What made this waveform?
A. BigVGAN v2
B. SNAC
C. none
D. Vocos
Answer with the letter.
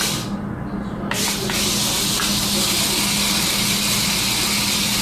C